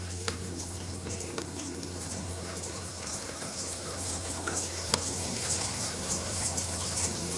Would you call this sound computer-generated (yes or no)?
yes